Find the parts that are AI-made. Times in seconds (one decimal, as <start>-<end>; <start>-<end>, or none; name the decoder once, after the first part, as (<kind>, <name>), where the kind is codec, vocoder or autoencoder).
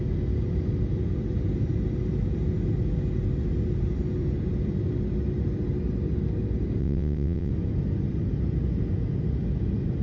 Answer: 6.8-7.5 (vocoder, WaveNeXt)